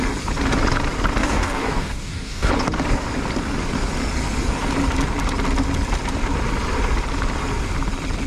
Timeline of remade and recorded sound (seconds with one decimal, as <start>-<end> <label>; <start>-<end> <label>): 0.0-1.2 recorded; 1.2-2.5 remade; 2.5-8.3 recorded